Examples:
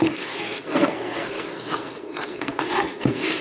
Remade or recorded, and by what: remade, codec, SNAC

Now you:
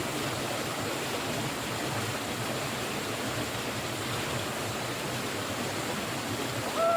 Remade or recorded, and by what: recorded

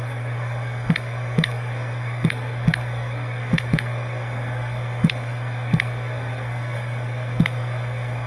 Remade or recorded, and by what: remade, codec, SNAC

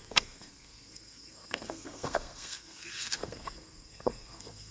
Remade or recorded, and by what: remade, codec, SNAC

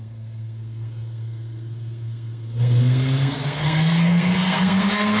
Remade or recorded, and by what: remade, codec, SNAC